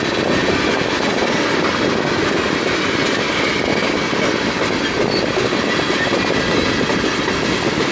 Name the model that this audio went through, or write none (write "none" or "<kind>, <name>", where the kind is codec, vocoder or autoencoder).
none